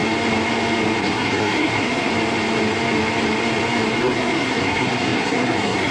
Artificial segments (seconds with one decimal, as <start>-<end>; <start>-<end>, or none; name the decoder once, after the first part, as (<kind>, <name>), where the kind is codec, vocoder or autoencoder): 1.0-2.1 (codec, SNAC); 4.0-5.9